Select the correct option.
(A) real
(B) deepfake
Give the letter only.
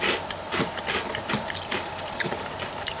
A